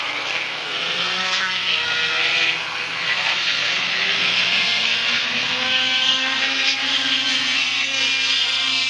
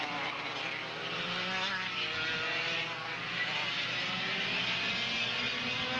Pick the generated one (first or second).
first